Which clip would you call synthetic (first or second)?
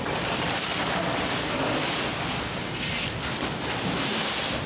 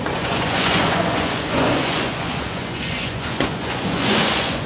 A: second